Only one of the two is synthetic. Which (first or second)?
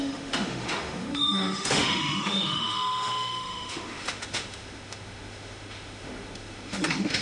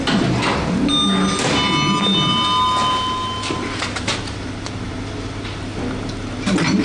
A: first